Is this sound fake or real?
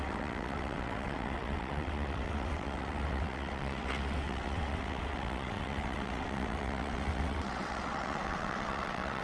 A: fake